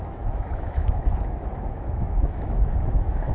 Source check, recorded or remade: remade